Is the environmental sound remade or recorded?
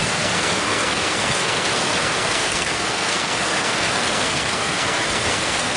remade